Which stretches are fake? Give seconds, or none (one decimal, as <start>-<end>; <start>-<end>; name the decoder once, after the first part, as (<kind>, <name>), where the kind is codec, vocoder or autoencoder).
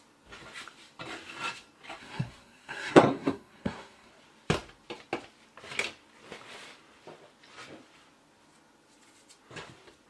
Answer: 2.0-4.1 (codec, SNAC)